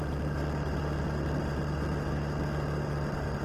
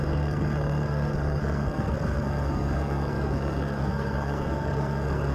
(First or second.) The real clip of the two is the first